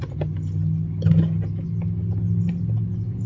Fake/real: real